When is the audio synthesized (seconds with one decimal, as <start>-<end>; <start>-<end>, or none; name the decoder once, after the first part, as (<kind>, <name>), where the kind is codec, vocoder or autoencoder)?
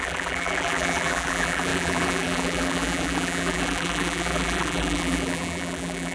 0.0-6.1 (vocoder, BigVGAN v2)